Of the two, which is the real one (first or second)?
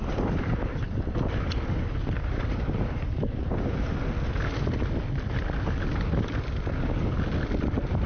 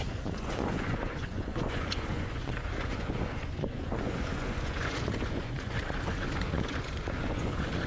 first